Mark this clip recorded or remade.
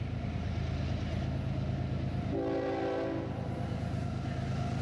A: recorded